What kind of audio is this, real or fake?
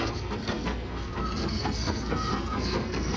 fake